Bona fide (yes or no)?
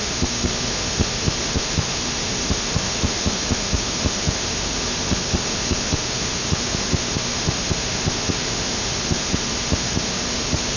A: no